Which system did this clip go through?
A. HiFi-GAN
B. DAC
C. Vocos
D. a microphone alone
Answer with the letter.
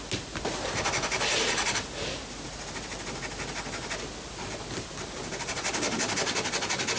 D